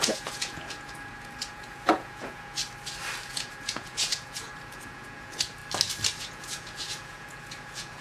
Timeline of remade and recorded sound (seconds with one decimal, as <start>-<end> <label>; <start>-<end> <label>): 0.0-2.6 remade; 2.6-3.3 recorded; 3.3-5.6 remade; 5.6-6.2 recorded; 6.2-8.0 remade